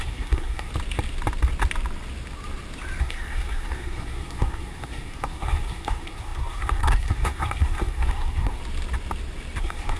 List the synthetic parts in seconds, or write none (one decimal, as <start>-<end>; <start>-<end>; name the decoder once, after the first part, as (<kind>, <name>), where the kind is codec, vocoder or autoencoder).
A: 0.0-0.7 (codec, SNAC); 3.0-8.6; 9.6-10.0